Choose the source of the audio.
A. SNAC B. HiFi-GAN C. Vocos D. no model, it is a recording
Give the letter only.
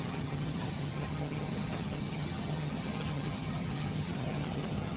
B